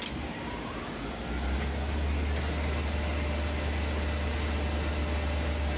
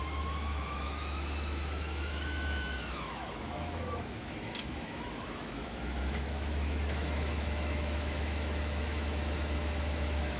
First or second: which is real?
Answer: first